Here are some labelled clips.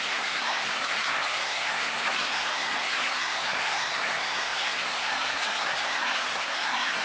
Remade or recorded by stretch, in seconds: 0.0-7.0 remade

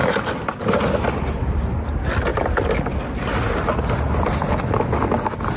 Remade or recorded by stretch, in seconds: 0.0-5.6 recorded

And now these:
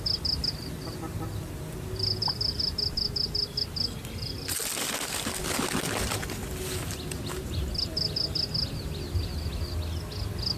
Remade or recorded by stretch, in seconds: 0.0-10.6 recorded

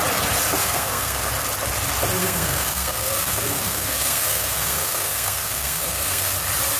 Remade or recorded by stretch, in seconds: 0.0-0.6 recorded; 0.6-1.3 remade; 1.3-2.2 recorded; 2.2-6.3 remade; 6.3-6.8 recorded